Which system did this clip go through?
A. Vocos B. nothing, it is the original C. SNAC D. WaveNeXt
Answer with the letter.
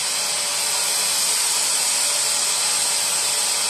B